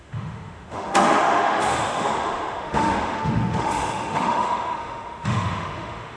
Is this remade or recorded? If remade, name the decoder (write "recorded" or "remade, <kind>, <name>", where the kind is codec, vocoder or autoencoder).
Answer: remade, autoencoder, DAC-VAE